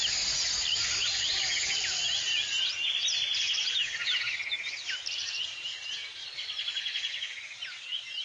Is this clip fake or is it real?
real